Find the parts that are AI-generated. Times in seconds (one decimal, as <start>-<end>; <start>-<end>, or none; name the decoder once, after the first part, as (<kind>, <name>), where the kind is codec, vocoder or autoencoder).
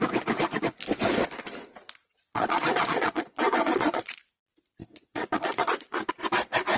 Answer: 2.0-4.2 (vocoder, Vocos); 4.8-6.1